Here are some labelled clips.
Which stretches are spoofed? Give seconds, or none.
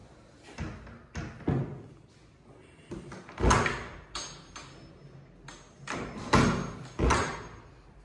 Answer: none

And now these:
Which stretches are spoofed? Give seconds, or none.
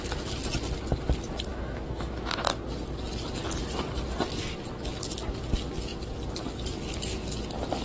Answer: 1.5-2.5 (autoencoder, DAC-VAE)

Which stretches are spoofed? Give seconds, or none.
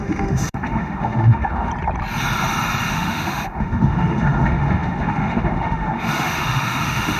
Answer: 0.0-1.7 (autoencoder, DAC-VAE); 2.9-7.2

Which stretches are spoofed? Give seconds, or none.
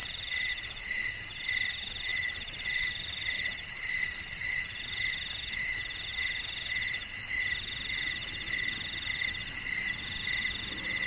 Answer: 0.0-0.5 (vocoder, BigVGAN v2); 2.1-5.1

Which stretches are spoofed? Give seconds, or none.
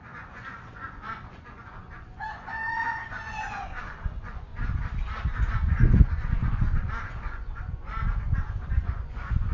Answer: 0.0-4.5 (vocoder, Vocos); 5.5-9.5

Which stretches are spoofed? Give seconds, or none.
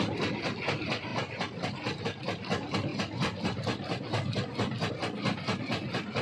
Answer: 2.9-4.9 (vocoder, BigVGAN v2)